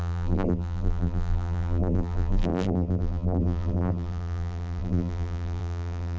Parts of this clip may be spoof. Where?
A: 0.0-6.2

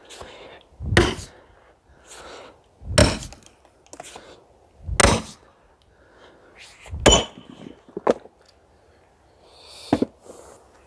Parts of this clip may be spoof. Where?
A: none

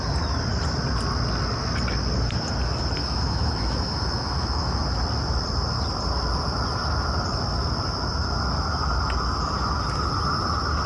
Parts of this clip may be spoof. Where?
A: 3.0-4.8

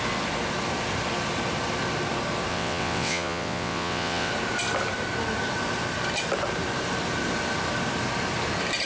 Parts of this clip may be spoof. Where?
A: 2.5-4.3